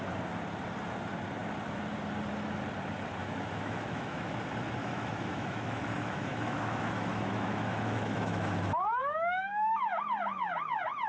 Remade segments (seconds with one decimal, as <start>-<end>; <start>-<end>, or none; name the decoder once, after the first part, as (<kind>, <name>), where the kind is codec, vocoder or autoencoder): 3.2-4.3 (autoencoder, DAC-VAE); 4.8-10.0